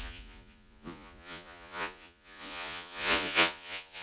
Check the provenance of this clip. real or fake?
fake